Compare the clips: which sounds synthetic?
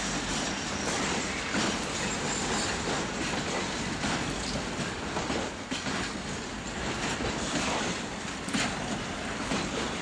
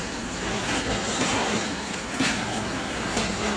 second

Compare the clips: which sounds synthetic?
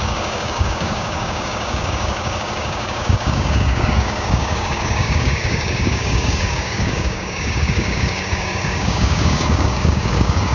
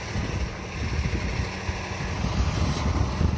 first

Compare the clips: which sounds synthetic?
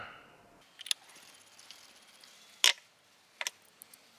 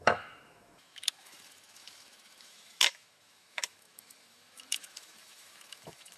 second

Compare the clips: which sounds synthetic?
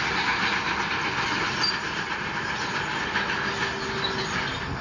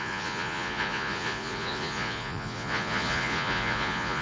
second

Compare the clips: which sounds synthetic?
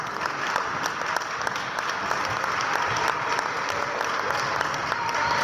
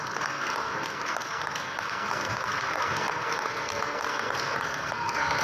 second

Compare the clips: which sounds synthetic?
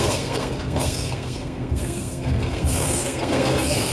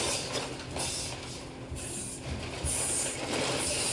first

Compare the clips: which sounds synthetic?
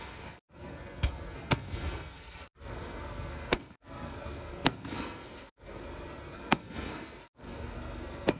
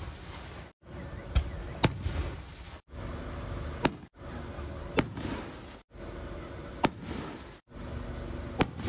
first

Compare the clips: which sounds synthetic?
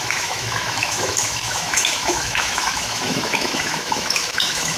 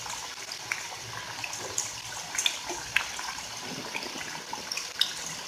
first